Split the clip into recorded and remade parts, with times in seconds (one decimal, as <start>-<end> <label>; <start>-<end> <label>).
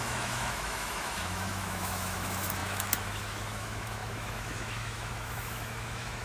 0.0-6.2 remade